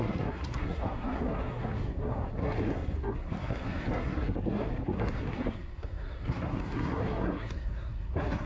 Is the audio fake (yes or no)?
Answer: yes